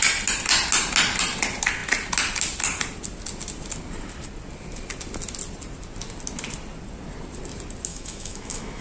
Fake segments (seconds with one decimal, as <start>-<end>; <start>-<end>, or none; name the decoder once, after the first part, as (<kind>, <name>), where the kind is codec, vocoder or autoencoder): 7.9-8.8 (autoencoder, DAC-VAE)